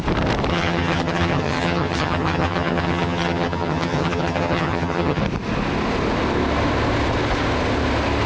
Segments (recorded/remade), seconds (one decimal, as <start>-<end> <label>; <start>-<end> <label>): 0.0-0.5 recorded; 0.5-5.2 remade; 5.2-8.3 recorded